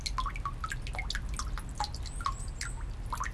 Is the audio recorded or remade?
recorded